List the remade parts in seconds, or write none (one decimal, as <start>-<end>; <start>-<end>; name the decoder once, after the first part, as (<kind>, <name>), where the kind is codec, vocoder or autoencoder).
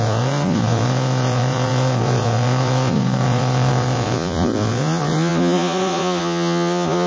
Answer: 0.0-7.1 (vocoder, Vocos)